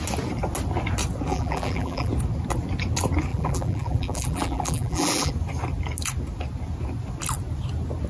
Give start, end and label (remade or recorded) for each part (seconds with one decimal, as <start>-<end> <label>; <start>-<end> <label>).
0.0-1.3 recorded; 1.3-2.1 remade; 2.1-3.3 recorded; 3.3-5.3 remade; 5.3-8.1 recorded